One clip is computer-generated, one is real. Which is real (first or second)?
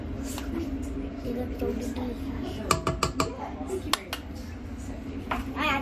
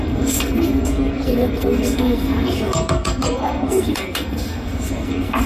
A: first